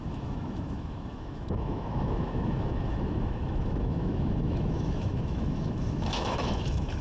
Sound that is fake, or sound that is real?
fake